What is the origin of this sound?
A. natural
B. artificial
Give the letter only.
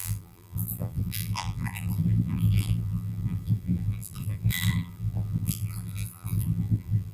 B